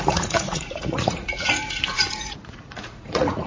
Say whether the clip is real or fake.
fake